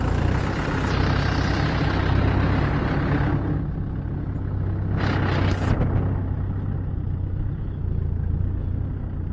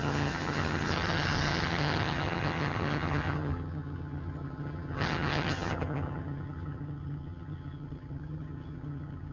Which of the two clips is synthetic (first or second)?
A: second